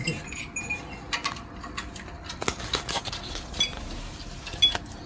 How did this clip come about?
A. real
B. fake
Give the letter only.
A